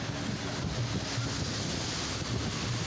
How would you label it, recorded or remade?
recorded